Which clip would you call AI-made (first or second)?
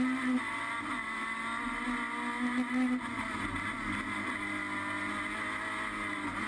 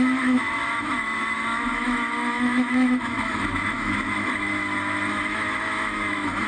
second